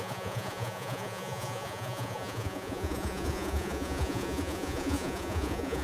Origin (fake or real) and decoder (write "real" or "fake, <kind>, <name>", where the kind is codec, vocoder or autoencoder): fake, vocoder, Vocos